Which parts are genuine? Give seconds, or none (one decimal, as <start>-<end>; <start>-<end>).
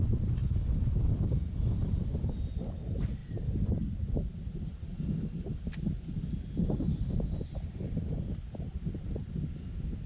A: 0.0-10.1